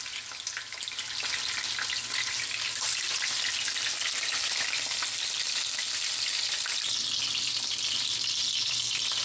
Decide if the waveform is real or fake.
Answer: real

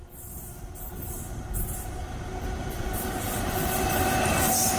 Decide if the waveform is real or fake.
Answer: real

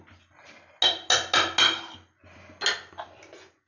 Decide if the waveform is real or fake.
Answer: real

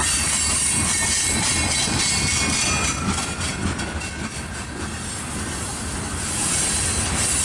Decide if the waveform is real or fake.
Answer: real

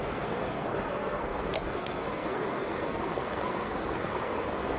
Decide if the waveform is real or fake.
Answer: fake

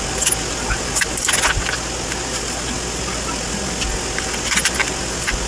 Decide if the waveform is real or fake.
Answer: real